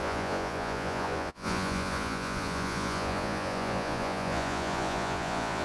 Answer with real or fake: fake